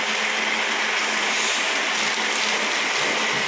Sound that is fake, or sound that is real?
real